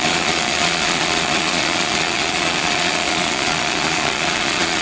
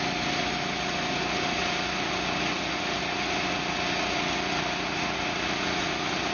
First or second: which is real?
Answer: second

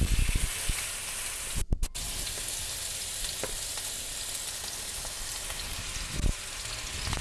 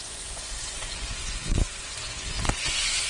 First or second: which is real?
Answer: first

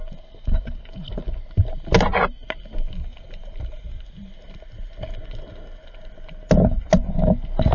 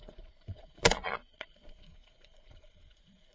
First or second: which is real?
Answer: first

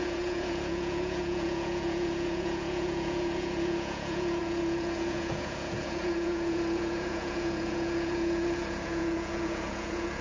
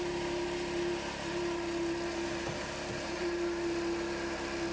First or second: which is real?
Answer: second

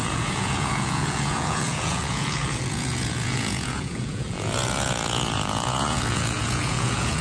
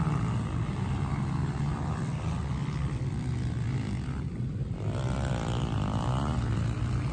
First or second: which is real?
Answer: second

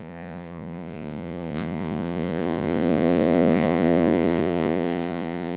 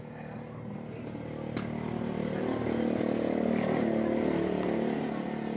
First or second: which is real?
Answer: second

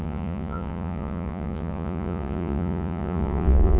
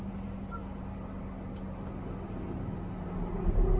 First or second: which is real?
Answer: second